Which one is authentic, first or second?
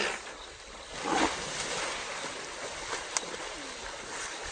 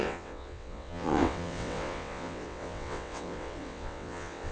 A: first